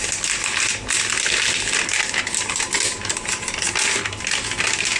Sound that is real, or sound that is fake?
fake